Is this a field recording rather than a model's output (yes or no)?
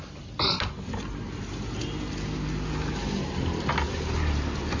yes